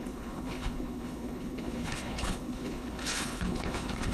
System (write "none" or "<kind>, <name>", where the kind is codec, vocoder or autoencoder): codec, HILCodec